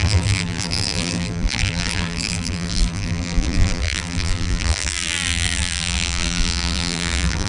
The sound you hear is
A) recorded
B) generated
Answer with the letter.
B